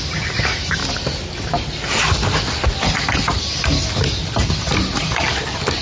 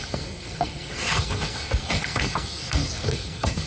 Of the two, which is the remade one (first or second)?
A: second